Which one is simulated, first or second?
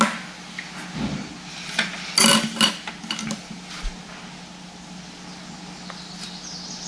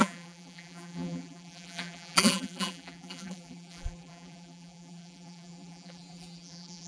second